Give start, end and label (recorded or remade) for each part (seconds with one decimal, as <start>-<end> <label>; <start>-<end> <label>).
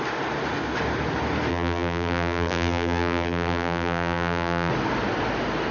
0.0-1.5 recorded; 1.5-4.7 remade; 4.7-5.7 recorded